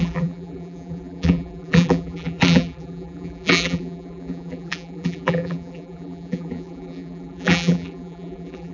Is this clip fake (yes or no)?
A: yes